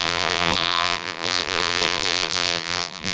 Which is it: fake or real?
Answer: fake